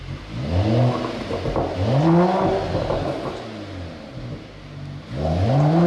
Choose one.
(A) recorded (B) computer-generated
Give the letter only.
A